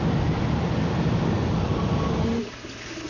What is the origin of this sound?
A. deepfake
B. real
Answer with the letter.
B